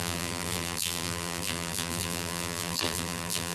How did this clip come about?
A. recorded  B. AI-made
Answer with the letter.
B